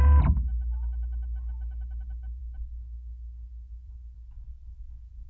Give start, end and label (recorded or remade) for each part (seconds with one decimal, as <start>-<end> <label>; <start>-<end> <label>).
0.0-2.4 recorded; 2.4-4.5 remade; 4.5-5.3 recorded